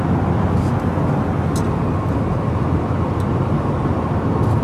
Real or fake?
real